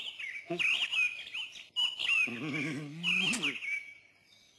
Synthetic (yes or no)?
no